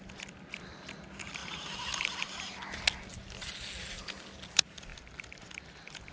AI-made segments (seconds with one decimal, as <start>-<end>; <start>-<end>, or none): none